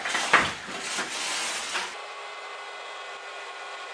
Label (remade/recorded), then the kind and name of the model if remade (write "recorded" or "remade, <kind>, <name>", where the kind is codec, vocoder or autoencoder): recorded